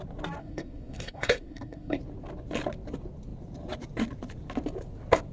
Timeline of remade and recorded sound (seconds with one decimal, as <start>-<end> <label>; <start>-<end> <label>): 0.0-0.4 recorded; 0.4-2.0 remade; 2.0-5.3 recorded